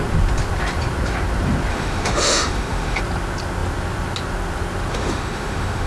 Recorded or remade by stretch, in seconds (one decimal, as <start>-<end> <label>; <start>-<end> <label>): 0.0-1.7 recorded; 1.7-3.0 remade; 3.0-4.9 recorded; 4.9-5.9 remade